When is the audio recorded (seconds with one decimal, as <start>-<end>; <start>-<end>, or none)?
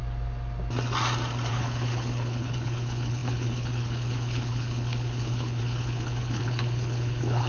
0.0-1.5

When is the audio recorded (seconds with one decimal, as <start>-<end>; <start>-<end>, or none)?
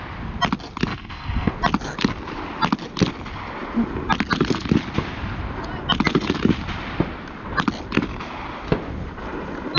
0.0-0.9; 1.5-9.8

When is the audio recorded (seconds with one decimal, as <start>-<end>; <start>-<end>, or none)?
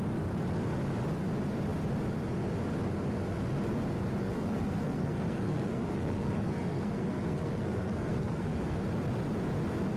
0.0-4.2; 8.8-10.0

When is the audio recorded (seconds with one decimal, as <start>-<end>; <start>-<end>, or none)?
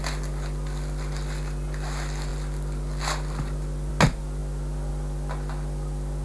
0.0-6.2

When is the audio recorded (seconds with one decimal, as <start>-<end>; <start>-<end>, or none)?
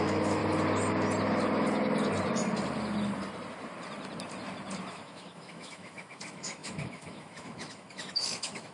0.4-4.9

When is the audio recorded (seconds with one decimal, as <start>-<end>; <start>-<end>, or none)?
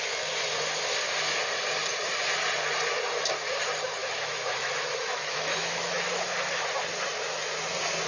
0.0-4.0; 6.7-8.1